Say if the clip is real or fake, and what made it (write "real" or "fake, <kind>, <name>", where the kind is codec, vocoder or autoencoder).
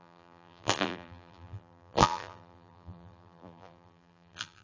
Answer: fake, vocoder, BigVGAN v2